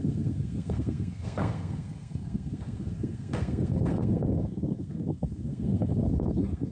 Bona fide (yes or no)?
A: no